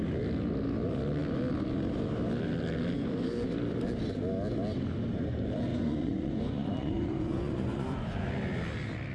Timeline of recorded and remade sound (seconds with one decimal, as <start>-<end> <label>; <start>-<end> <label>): 0.0-5.7 recorded; 5.7-8.3 remade; 8.3-9.1 recorded